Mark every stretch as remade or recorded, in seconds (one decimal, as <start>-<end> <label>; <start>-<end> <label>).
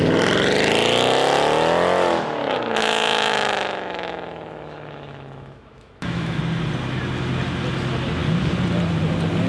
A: 0.0-2.8 recorded; 2.8-6.4 remade; 6.4-9.5 recorded